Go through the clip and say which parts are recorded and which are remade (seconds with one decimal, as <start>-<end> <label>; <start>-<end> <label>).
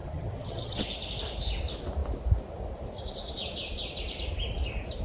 0.0-0.8 remade; 0.8-5.0 recorded